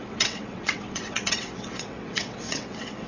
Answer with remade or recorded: remade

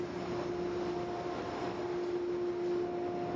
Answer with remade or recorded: recorded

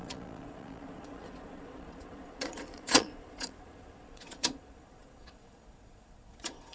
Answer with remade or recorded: remade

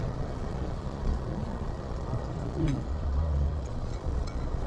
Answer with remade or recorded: remade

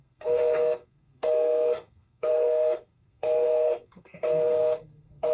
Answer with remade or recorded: remade